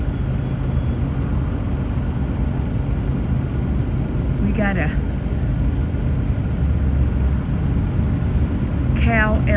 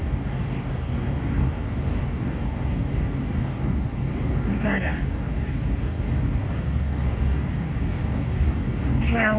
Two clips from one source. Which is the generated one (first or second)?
second